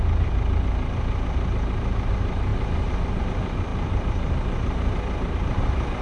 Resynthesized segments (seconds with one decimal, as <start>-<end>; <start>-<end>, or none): none